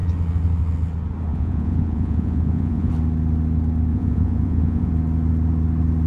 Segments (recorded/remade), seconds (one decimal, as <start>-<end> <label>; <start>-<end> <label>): 0.0-1.3 recorded; 1.3-2.9 remade; 2.9-3.9 recorded; 3.9-4.9 remade; 4.9-6.1 recorded